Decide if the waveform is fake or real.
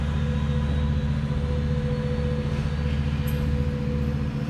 real